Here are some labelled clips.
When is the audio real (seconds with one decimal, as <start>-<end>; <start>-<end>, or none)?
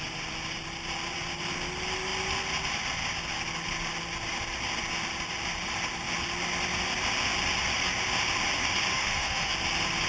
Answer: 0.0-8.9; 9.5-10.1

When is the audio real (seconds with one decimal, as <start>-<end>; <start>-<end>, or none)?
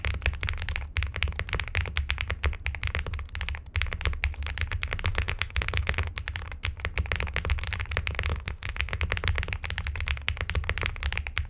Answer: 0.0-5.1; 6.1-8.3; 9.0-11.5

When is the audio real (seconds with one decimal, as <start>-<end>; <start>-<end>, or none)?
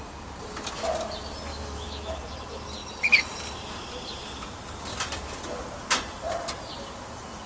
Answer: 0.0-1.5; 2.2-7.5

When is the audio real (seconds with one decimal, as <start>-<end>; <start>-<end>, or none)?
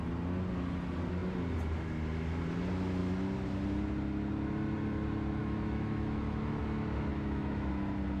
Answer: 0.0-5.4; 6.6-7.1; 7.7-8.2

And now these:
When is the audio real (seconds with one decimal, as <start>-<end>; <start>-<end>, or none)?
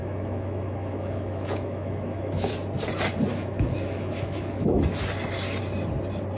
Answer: 2.5-3.3; 4.8-6.4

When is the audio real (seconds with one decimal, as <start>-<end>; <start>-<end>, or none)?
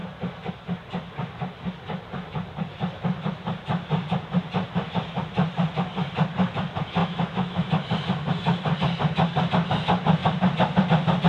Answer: 0.0-7.0; 7.7-11.3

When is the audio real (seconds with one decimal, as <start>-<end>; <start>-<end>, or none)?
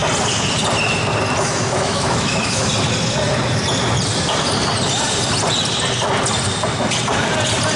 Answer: 0.0-1.4; 2.7-7.8